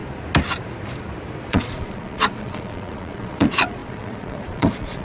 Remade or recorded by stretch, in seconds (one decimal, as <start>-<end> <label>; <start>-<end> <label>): 0.0-1.5 recorded; 1.5-5.0 remade